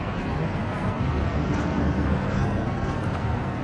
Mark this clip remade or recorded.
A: remade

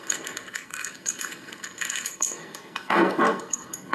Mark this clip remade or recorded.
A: remade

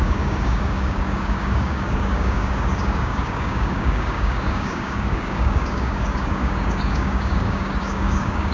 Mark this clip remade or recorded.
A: remade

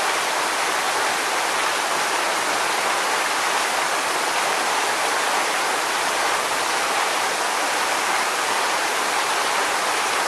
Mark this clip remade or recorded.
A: recorded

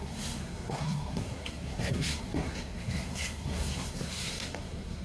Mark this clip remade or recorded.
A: remade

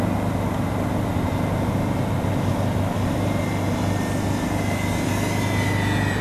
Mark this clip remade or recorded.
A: recorded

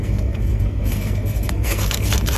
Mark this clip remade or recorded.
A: remade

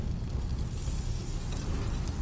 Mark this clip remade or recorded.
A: recorded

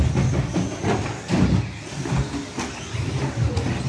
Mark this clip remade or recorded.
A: recorded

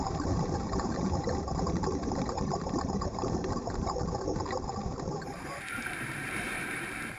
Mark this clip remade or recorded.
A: remade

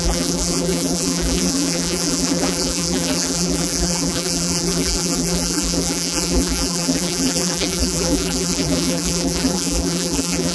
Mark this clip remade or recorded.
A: remade